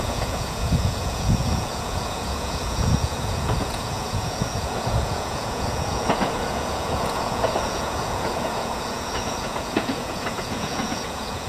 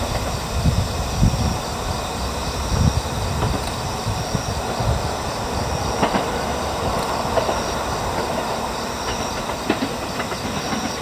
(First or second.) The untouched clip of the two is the second